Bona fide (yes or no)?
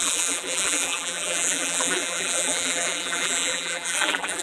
no